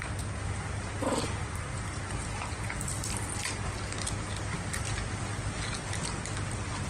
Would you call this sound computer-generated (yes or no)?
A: no